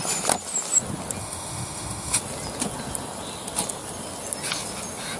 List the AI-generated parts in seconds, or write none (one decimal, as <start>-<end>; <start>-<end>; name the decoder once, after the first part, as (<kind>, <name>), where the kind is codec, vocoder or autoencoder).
1.2-2.2 (autoencoder, DAC-VAE)